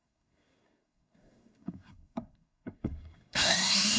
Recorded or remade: remade